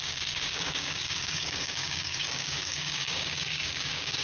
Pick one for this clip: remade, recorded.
remade